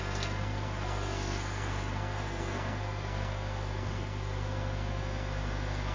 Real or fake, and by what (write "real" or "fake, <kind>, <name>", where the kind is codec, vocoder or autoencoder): fake, codec, SNAC